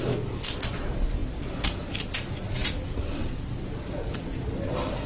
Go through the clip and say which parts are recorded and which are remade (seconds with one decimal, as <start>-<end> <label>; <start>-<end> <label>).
0.0-5.1 recorded